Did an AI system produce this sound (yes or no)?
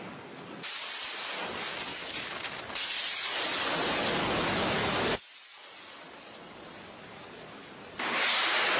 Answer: no